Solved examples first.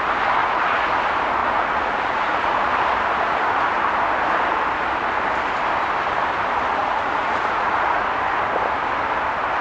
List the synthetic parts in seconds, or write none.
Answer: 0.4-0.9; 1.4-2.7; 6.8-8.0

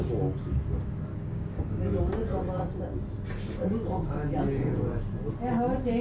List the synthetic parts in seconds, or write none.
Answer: 1.1-2.0

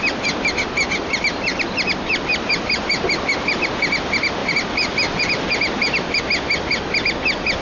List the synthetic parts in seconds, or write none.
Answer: 1.5-3.7; 4.4-6.2